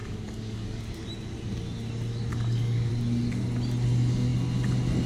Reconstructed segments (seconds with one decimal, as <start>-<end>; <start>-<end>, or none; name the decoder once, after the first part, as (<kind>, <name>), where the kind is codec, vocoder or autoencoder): 0.0-0.8 (codec, DAC); 2.3-2.9